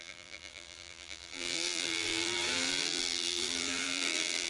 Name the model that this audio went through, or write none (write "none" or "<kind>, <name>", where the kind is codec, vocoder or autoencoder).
vocoder, BigVGAN v2